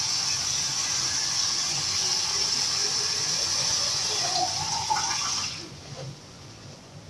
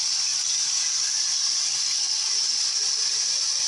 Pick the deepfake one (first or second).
first